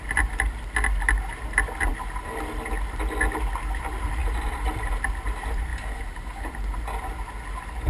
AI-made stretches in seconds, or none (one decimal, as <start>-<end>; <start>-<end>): 4.2-4.9; 5.7-6.5